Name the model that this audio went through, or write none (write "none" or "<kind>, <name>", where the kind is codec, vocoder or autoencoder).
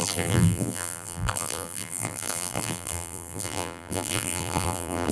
vocoder, BigVGAN v2